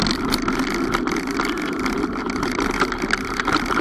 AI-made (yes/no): no